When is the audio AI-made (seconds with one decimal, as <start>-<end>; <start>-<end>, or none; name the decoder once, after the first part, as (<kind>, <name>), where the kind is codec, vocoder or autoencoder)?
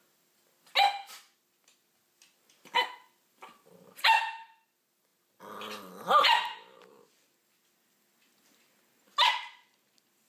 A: none